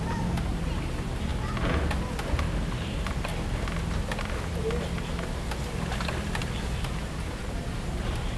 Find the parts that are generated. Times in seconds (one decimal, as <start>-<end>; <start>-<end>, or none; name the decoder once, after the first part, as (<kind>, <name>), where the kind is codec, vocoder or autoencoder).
0.0-1.3 (vocoder, BigVGAN v2); 2.3-3.3; 6.4-8.4